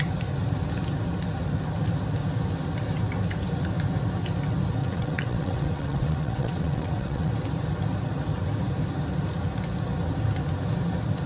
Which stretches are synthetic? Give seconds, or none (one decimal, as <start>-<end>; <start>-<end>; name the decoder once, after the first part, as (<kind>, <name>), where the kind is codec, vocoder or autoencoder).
4.8-7.3 (vocoder, WaveNeXt)

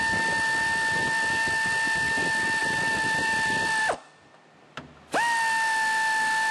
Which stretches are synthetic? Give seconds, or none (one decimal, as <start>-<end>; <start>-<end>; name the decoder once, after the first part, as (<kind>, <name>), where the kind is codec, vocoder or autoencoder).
2.6-3.8 (vocoder, BigVGAN v2)